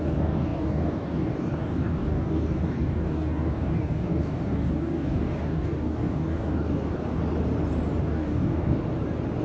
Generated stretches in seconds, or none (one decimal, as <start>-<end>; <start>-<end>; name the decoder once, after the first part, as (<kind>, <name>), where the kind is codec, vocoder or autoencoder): 0.0-7.2 (codec, DAC); 8.0-8.8